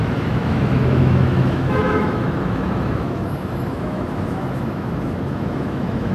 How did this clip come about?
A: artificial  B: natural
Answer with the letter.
A